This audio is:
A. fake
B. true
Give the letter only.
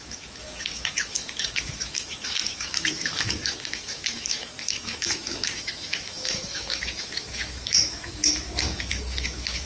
A